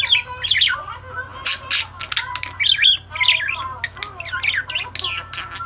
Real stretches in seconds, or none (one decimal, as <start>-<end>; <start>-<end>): 0.0-5.7